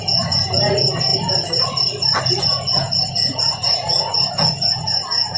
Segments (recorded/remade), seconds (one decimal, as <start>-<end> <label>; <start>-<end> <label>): 0.0-1.1 remade; 1.1-2.4 recorded; 2.4-5.4 remade